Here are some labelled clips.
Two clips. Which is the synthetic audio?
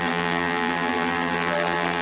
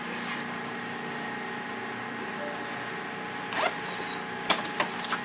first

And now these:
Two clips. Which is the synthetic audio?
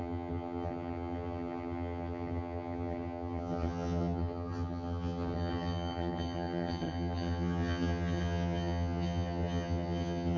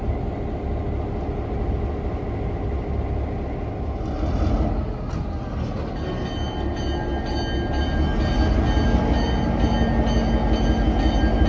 first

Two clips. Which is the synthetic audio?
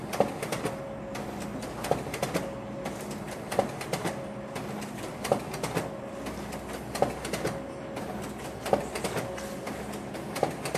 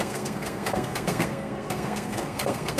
second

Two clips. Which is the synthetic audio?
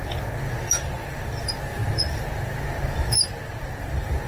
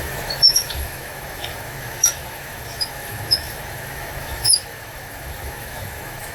second